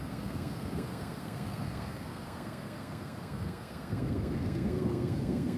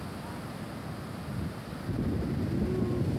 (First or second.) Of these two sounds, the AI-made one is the first